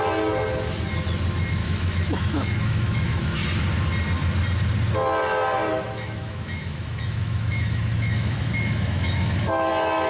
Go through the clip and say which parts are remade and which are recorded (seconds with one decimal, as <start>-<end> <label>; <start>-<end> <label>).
0.0-1.6 recorded; 1.6-3.4 remade; 3.4-5.7 recorded; 5.7-9.7 remade; 9.7-10.1 recorded